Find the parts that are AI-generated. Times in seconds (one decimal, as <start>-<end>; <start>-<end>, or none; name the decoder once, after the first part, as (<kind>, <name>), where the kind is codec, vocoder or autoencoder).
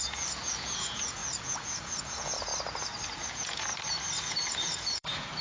0.0-2.5 (vocoder, Vocos); 3.3-3.7; 4.2-5.4